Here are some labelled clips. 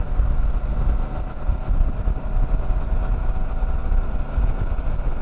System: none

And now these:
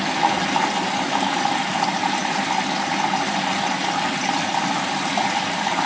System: none